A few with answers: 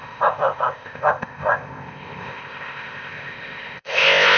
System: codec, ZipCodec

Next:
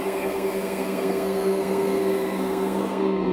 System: codec, SNAC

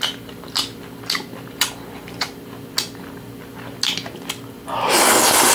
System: none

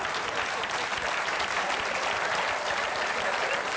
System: none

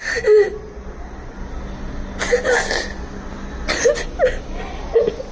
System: none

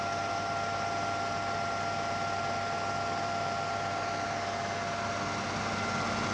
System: none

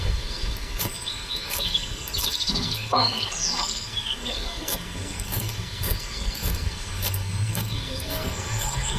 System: codec, SNAC